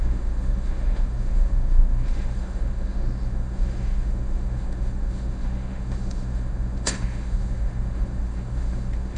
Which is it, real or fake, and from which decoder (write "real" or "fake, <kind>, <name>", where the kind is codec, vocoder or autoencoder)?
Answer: fake, autoencoder, DAC-VAE